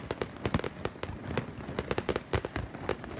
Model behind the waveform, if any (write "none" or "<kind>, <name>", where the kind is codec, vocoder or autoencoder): none